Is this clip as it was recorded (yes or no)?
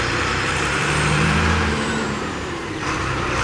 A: no